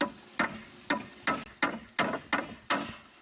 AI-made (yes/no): no